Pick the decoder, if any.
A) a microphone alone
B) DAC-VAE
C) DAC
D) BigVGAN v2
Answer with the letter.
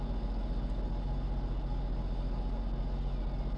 A